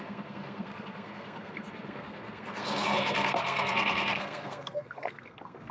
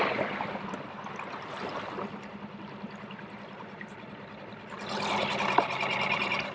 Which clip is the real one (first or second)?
second